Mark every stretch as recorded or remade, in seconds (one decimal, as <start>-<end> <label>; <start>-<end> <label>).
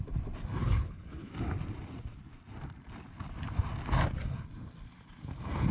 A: 0.0-0.6 recorded; 0.6-1.3 remade; 1.3-5.7 recorded